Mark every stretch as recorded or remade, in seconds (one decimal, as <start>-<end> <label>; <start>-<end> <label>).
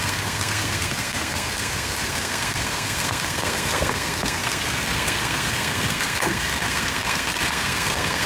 0.0-8.3 remade